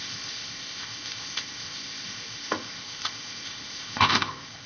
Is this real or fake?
fake